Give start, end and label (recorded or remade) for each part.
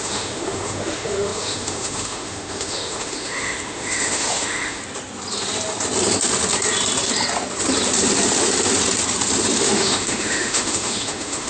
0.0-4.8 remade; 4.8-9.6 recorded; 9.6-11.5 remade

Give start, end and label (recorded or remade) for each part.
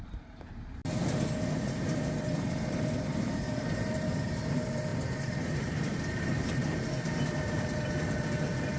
0.0-0.8 remade; 0.8-1.6 recorded; 1.6-8.8 remade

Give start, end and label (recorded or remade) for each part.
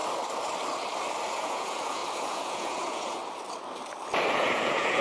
0.0-1.3 recorded; 1.3-3.2 remade; 3.2-4.3 recorded; 4.3-5.0 remade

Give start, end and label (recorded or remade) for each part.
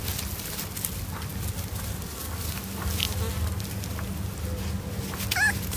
0.0-5.8 recorded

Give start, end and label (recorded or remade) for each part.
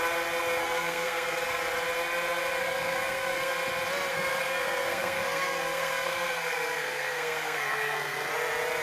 0.0-0.6 recorded; 0.6-1.6 remade; 1.6-2.6 recorded; 2.6-3.5 remade; 3.5-4.1 recorded; 4.1-8.3 remade; 8.3-8.8 recorded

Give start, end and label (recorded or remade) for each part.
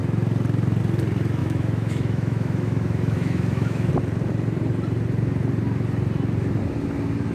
0.0-1.4 recorded; 1.4-3.9 remade; 3.9-7.3 recorded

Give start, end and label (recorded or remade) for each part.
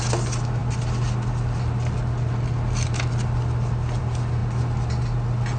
0.0-5.6 recorded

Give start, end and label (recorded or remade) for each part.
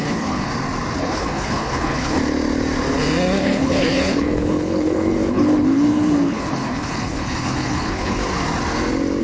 0.0-0.5 remade; 0.5-1.0 recorded; 1.0-2.2 remade; 2.2-3.4 recorded; 3.4-8.2 remade; 8.2-9.2 recorded